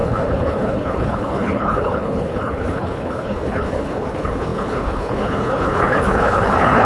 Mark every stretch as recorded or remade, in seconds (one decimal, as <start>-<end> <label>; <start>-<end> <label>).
0.0-6.8 remade